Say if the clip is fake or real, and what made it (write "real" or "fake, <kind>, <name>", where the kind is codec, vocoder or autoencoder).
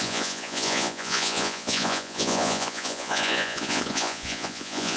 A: fake, vocoder, Vocos